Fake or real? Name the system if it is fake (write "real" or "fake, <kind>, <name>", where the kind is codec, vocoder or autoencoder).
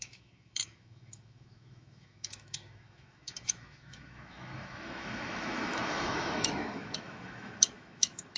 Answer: fake, autoencoder, DAC-VAE